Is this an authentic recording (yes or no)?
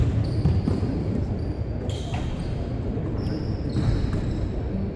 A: yes